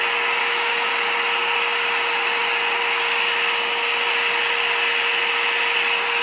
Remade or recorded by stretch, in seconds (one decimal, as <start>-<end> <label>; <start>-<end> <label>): 0.0-0.4 recorded; 0.4-0.9 remade; 0.9-6.2 recorded